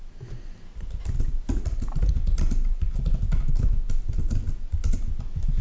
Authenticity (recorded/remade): recorded